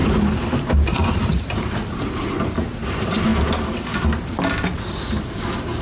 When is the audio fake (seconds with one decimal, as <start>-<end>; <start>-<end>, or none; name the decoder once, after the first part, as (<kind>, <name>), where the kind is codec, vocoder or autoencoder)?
0.0-2.3 (vocoder, BigVGAN v2)